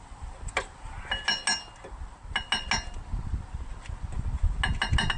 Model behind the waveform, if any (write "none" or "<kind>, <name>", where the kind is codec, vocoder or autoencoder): none